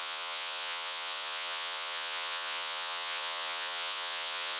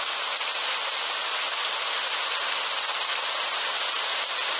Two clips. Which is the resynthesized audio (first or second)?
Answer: first